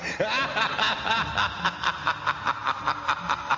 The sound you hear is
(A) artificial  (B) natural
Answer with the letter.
B